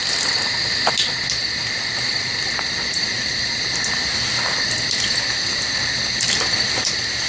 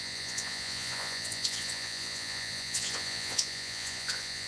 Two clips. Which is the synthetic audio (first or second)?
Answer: second